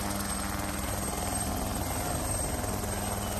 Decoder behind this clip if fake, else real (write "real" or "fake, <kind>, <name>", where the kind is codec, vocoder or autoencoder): real